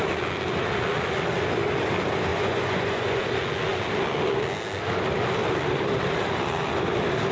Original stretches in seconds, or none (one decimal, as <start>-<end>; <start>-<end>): 0.0-2.3; 3.2-7.3